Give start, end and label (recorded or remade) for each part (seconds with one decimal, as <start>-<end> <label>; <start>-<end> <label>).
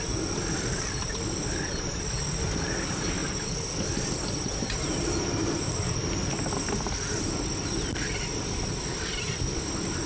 0.0-4.9 recorded; 4.9-5.7 remade; 5.7-10.1 recorded